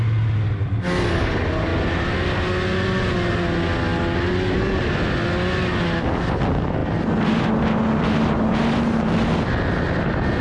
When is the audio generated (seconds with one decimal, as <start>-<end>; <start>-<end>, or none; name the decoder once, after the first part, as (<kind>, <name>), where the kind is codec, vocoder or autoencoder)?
none